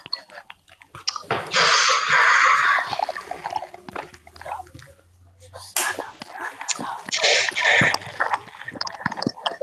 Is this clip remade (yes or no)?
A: no